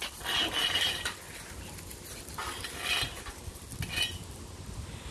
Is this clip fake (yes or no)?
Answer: no